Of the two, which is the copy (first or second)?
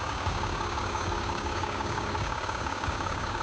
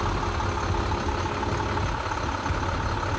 first